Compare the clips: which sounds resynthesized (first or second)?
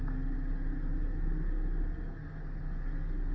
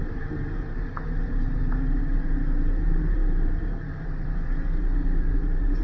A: second